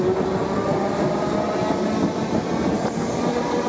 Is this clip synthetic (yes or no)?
no